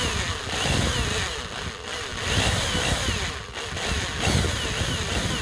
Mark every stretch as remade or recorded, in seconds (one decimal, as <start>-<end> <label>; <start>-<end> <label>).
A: 0.0-5.4 recorded